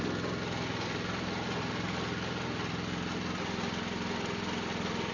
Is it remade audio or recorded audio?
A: recorded